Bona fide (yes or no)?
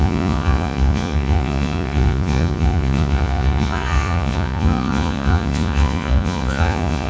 no